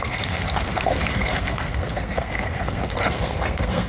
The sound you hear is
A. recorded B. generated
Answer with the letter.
B